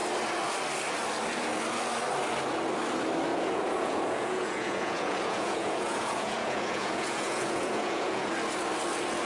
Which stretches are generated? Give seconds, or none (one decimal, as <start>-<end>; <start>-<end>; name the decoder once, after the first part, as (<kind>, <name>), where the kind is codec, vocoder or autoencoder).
3.3-8.3 (vocoder, Vocos)